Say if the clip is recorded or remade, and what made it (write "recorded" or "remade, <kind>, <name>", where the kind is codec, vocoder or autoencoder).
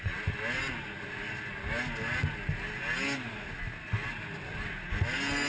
recorded